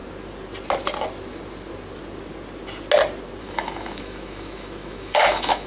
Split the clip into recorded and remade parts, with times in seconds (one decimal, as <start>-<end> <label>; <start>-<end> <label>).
0.0-3.4 recorded; 3.4-5.7 remade